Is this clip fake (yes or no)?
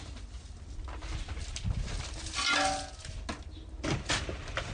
no